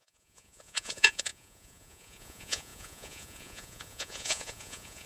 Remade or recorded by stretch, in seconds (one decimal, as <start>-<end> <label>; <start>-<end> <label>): 0.0-5.1 remade